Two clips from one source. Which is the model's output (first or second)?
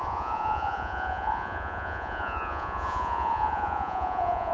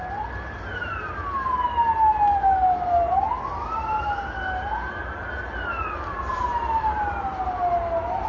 first